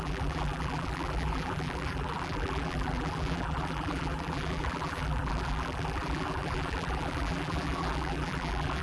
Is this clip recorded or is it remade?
remade